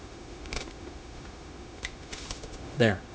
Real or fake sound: fake